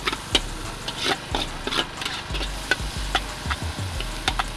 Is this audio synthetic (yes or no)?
no